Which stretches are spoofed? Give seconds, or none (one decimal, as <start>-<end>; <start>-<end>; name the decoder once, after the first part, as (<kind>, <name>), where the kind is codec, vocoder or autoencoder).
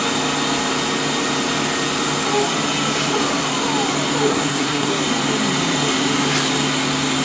4.3-5.0 (codec, SNAC)